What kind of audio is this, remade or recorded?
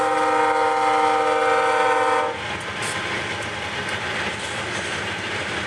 recorded